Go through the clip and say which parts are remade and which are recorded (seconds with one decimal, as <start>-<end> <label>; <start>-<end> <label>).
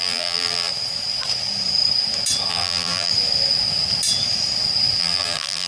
0.0-0.7 remade; 0.7-2.5 recorded; 2.5-3.1 remade; 3.1-5.0 recorded; 5.0-5.7 remade